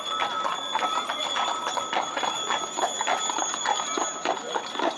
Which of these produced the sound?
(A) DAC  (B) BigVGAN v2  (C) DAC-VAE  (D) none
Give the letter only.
D